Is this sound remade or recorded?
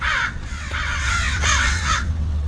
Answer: remade